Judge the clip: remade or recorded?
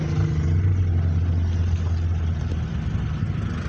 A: recorded